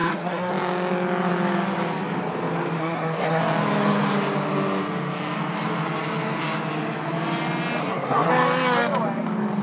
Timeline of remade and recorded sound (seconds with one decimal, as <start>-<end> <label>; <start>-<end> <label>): 0.0-0.5 remade; 0.5-2.8 recorded; 2.8-3.4 remade; 3.4-7.8 recorded; 7.8-8.3 remade; 8.3-9.6 recorded